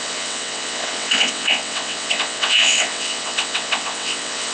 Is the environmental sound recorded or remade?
remade